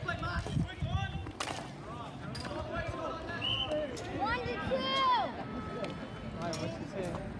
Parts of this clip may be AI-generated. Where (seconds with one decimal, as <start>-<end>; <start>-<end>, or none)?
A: none